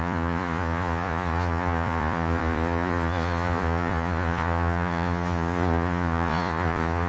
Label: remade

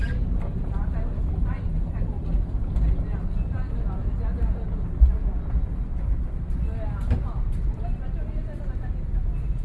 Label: recorded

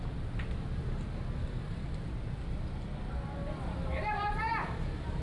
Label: recorded